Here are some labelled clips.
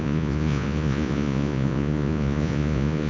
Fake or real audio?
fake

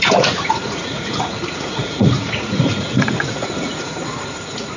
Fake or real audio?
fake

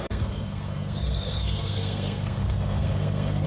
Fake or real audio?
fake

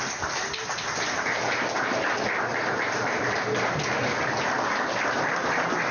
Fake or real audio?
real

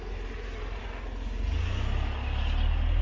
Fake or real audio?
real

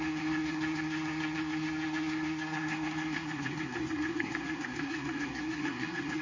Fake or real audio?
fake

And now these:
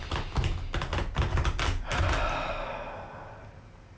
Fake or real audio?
real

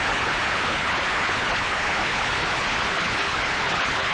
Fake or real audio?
fake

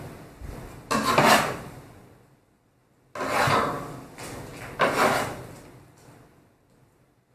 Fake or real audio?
real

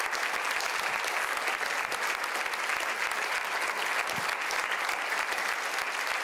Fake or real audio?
real